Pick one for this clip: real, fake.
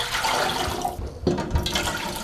real